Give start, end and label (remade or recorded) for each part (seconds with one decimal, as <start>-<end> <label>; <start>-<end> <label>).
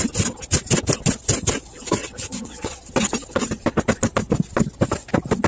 0.0-2.0 recorded; 2.0-2.9 remade; 2.9-5.5 recorded